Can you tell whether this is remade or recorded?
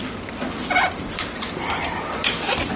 recorded